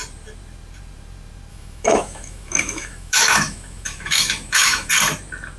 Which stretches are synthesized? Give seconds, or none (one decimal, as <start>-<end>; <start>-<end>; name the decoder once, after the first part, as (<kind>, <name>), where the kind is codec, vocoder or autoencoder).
1.5-4.9 (autoencoder, DAC-VAE)